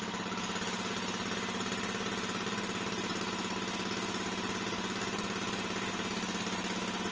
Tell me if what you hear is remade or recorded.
recorded